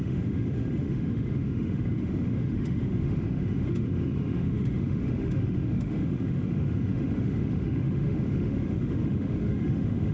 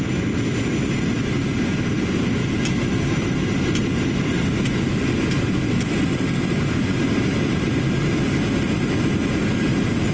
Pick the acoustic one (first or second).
second